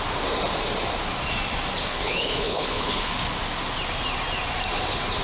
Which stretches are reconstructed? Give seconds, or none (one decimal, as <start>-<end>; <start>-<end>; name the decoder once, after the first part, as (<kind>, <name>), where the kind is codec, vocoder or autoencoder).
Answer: 1.9-3.1 (codec, HILCodec)